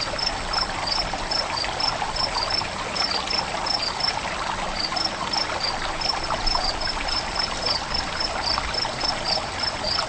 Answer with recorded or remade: recorded